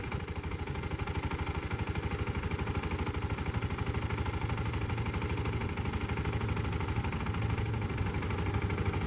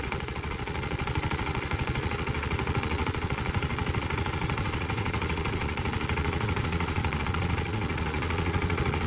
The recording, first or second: first